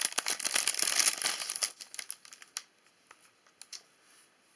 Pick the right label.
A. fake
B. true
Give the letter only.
B